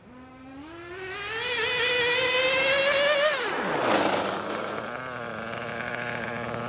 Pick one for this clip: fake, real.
real